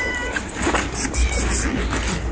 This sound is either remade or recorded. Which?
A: recorded